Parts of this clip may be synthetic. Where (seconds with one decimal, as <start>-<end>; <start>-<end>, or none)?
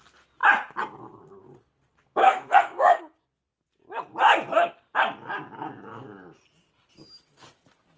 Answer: 2.2-3.0